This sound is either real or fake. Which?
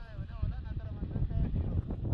real